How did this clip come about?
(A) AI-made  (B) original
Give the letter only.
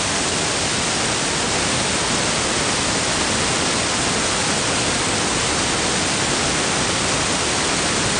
B